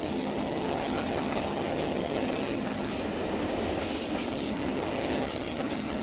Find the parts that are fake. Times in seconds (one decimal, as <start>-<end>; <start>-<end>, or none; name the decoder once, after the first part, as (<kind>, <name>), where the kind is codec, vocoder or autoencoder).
0.0-2.9 (vocoder, HiFi-GAN); 4.3-6.0